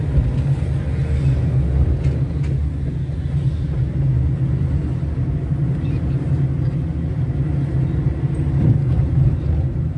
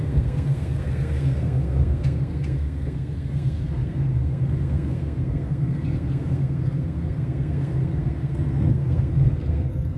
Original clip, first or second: first